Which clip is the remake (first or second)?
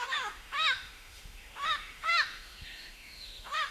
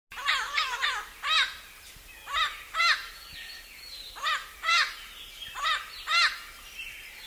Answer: first